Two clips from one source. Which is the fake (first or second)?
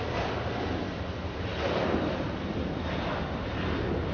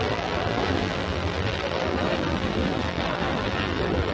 second